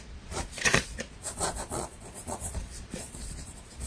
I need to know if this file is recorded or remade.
remade